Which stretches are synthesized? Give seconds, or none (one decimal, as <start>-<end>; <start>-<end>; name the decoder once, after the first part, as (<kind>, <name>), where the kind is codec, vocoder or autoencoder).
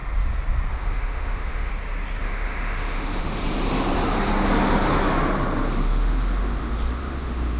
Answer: 0.7-1.7 (autoencoder, DAC-VAE); 2.2-3.4; 5.7-7.6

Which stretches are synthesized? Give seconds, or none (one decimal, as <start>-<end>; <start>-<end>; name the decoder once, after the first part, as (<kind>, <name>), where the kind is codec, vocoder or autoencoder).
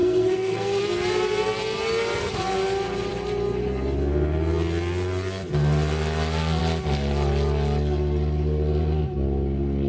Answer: 0.0-0.8 (codec, SNAC)